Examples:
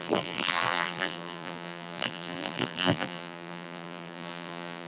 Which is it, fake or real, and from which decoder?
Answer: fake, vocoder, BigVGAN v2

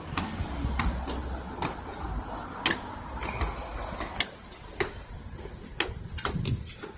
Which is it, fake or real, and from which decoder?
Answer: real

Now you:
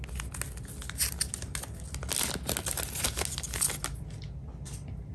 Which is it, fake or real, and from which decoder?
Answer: real